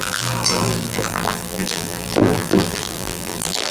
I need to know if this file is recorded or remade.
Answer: remade